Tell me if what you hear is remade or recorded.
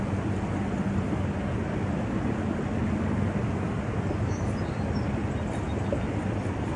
recorded